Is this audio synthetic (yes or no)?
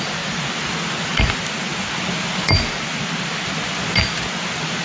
no